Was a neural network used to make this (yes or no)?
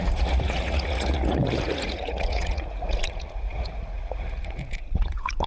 yes